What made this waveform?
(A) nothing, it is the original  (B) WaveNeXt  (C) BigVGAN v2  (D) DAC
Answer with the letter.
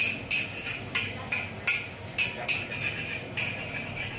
A